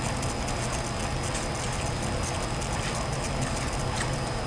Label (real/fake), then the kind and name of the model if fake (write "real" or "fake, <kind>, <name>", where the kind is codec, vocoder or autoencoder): real